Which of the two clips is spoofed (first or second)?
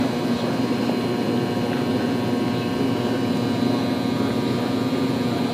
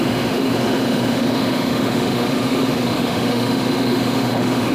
second